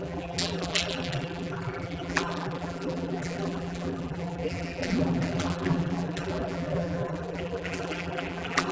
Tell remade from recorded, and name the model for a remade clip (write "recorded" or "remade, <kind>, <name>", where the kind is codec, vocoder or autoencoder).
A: remade, vocoder, BigVGAN v2